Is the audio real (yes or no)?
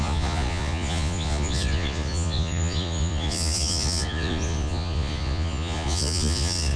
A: no